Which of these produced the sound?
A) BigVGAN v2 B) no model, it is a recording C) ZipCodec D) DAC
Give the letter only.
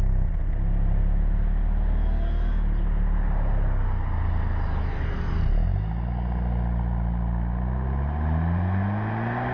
B